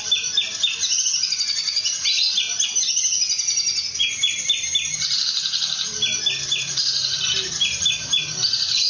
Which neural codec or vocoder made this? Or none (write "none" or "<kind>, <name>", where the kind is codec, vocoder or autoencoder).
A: none